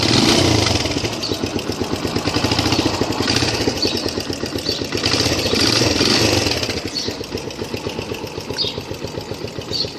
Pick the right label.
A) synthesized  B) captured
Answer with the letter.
B